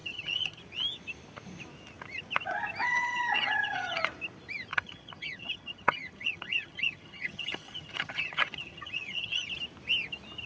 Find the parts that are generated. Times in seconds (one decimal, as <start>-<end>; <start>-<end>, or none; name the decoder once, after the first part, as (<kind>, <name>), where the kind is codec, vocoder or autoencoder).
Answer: 0.0-0.6 (vocoder, HiFi-GAN); 2.8-4.0; 4.7-9.5